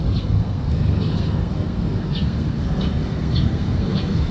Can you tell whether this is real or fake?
fake